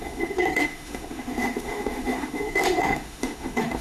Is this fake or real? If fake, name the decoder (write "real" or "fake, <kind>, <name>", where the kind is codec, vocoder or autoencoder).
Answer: fake, autoencoder, DAC-VAE